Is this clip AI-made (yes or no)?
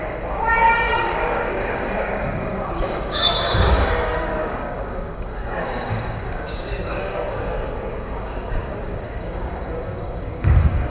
yes